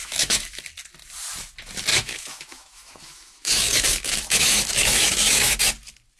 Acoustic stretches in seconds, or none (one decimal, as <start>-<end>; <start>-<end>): 0.6-1.9; 5.6-6.2